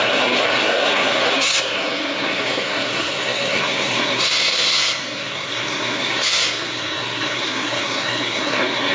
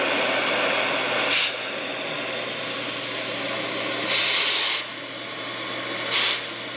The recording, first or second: second